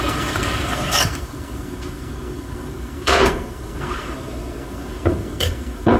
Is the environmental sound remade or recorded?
remade